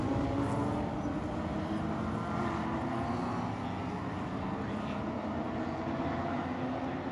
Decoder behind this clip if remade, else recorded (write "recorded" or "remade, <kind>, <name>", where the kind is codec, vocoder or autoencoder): recorded